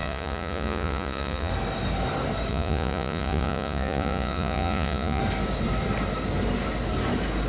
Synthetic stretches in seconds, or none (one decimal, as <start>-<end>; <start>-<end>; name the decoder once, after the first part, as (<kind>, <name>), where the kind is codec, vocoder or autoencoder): 0.0-1.5 (vocoder, Vocos); 2.5-5.2